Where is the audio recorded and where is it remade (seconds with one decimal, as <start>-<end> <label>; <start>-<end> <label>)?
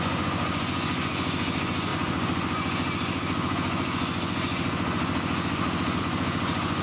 0.0-6.8 remade